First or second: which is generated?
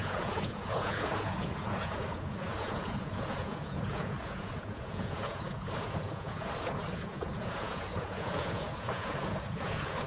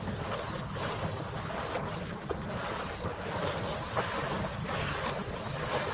first